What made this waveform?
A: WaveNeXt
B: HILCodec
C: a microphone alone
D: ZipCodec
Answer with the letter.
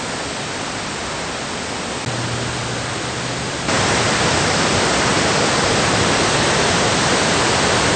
C